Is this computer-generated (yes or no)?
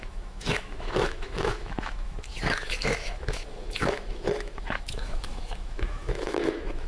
yes